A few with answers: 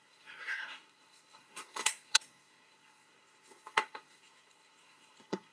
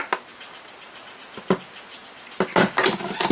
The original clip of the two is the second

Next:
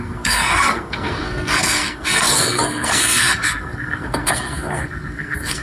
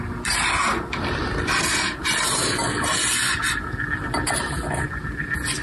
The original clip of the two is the second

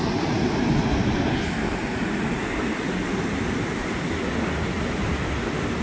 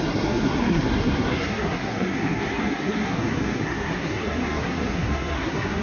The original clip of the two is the first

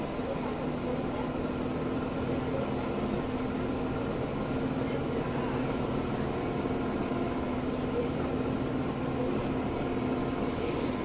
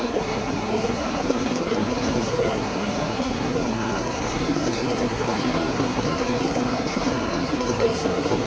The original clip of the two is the first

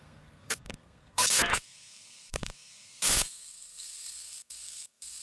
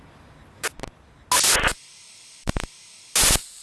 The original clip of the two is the second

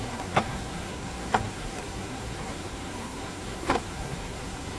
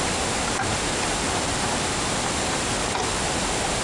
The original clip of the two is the second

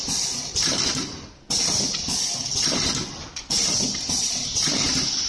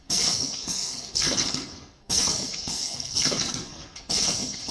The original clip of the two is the first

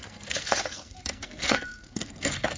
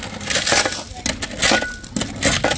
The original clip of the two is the second